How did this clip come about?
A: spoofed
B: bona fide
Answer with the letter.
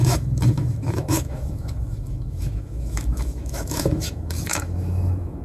A